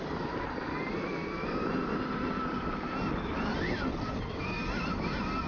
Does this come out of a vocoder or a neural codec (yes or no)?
no